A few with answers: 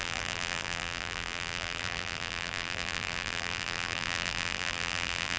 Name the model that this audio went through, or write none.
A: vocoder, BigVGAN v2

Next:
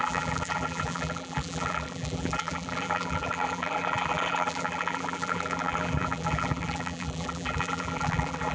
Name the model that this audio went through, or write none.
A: vocoder, BigVGAN v2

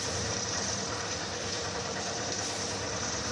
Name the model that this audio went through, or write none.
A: vocoder, BigVGAN v2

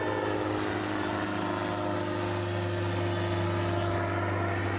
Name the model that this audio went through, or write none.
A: none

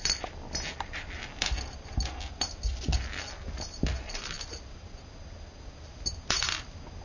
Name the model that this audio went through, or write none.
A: none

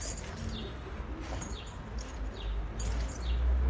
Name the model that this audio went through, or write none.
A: none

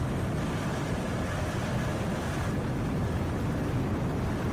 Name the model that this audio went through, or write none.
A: vocoder, BigVGAN v2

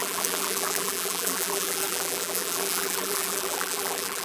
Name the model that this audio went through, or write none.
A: vocoder, BigVGAN v2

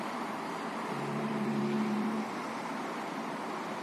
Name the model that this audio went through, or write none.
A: vocoder, BigVGAN v2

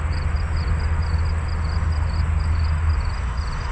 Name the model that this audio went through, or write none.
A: none